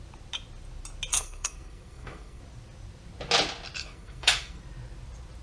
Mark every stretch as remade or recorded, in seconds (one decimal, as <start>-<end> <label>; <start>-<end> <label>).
0.0-1.1 recorded; 1.1-2.4 remade; 2.4-3.8 recorded; 3.8-4.6 remade; 4.6-5.4 recorded